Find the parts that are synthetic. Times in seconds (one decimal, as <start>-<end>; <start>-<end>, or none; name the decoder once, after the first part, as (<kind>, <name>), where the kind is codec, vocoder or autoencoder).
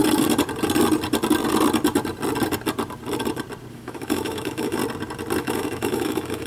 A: 3.7-4.8 (autoencoder, DAC-VAE); 5.4-6.5